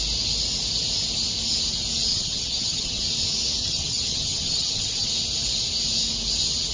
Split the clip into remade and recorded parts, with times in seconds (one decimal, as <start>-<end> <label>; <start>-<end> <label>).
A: 0.0-2.1 recorded; 2.1-3.0 remade; 3.0-3.6 recorded; 3.6-5.1 remade; 5.1-6.7 recorded